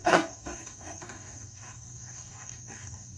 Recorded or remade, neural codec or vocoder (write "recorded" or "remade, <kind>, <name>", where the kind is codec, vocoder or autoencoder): remade, codec, DAC